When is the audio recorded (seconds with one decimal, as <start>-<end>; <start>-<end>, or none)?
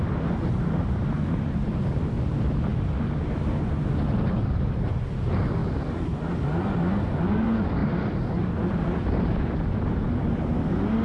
2.7-4.3; 5.6-7.2